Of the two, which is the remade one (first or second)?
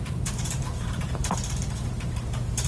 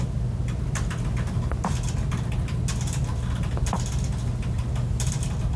first